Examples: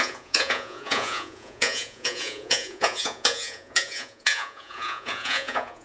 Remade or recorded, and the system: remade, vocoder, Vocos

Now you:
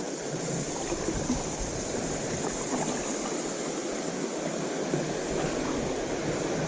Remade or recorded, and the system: recorded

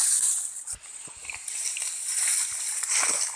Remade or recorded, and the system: recorded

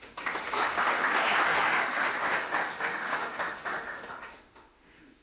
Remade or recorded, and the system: remade, autoencoder, DAC-VAE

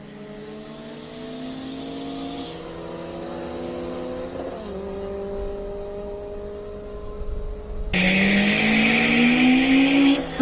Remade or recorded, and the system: recorded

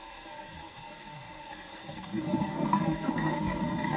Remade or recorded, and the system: remade, codec, SNAC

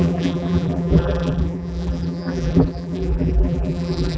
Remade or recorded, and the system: remade, vocoder, BigVGAN v2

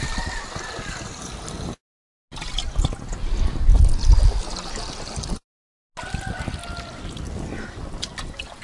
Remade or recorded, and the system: recorded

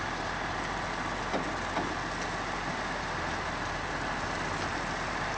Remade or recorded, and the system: recorded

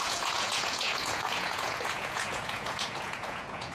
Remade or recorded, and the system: remade, vocoder, Vocos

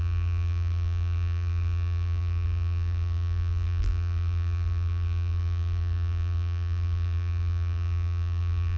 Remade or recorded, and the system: remade, vocoder, BigVGAN v2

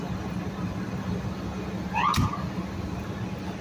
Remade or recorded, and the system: recorded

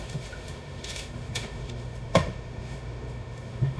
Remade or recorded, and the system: remade, autoencoder, DAC-VAE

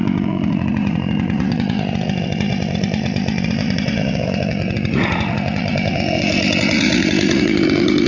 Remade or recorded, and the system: remade, vocoder, Vocos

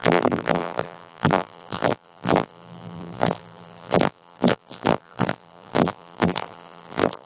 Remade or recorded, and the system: remade, vocoder, BigVGAN v2